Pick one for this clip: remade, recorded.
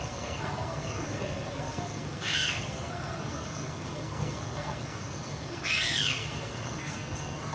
remade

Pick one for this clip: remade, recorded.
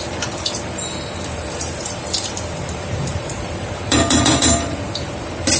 remade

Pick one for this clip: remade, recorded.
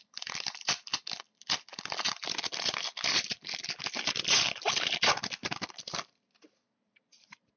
recorded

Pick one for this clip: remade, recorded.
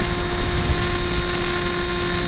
recorded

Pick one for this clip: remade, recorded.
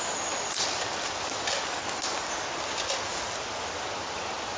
recorded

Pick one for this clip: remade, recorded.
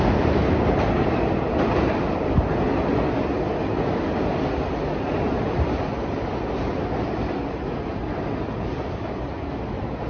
recorded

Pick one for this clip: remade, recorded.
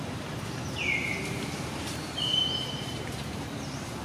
remade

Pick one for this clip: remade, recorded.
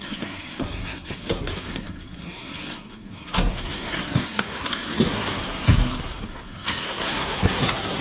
remade